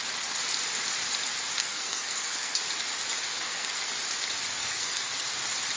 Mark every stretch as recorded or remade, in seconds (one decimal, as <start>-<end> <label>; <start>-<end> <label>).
0.0-1.6 recorded; 1.6-2.6 remade; 2.6-3.3 recorded; 3.3-3.9 remade; 3.9-4.6 recorded; 4.6-5.3 remade; 5.3-5.8 recorded